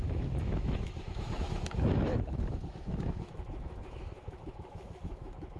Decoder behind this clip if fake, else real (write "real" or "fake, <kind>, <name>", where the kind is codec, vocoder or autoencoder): fake, autoencoder, DAC-VAE